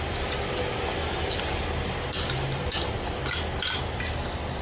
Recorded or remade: recorded